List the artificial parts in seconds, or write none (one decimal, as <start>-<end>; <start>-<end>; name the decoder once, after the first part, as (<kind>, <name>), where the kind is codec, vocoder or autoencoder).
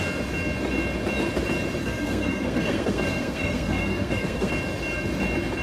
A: 1.8-4.5 (codec, SNAC)